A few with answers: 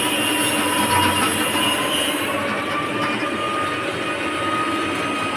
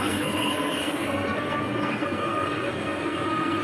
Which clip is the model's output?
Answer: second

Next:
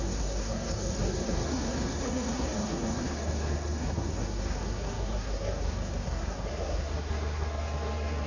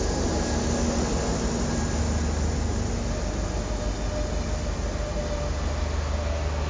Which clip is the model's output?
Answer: first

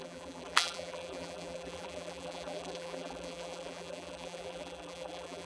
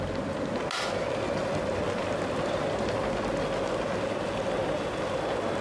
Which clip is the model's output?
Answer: first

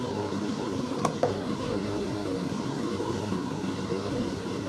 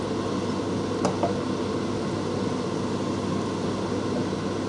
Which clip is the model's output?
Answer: first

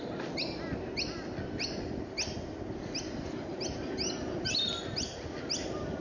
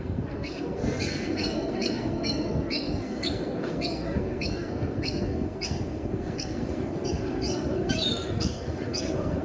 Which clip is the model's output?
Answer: second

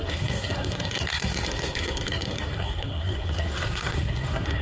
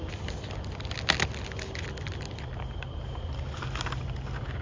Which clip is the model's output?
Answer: first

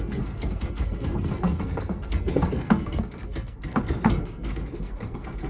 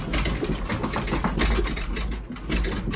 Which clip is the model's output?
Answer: first